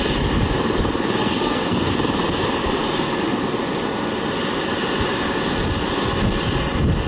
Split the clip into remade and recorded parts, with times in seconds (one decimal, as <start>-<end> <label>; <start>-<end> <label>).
0.0-1.2 recorded; 1.2-1.9 remade; 1.9-7.1 recorded